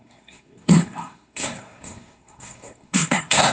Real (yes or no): no